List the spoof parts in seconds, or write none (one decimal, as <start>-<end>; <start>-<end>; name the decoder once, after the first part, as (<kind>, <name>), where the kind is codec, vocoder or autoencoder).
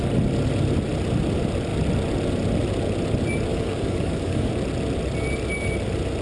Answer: 3.5-4.5 (codec, DAC)